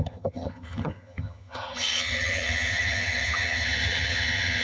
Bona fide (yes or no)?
no